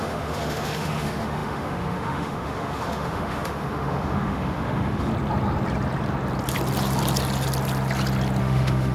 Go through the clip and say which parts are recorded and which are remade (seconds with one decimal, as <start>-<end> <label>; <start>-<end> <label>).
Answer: 0.0-5.1 remade; 5.1-8.4 recorded; 8.4-8.9 remade